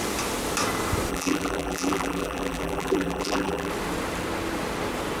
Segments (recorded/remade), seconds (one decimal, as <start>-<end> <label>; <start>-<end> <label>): 0.0-1.1 recorded; 1.1-3.7 remade; 3.7-5.2 recorded